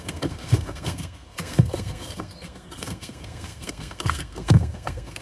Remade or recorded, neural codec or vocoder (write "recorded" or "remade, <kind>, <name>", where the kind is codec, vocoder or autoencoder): remade, codec, SNAC